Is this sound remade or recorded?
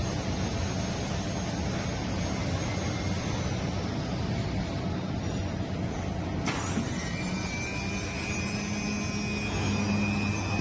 recorded